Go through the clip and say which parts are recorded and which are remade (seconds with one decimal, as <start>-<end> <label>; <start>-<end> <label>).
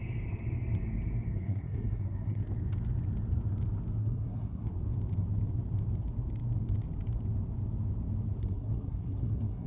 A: 0.0-1.3 recorded; 1.3-2.4 remade; 2.4-4.0 recorded; 4.0-4.7 remade; 4.7-8.4 recorded; 8.4-9.7 remade